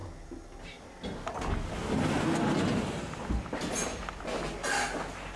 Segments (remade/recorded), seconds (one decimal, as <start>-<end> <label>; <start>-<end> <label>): 0.0-5.4 recorded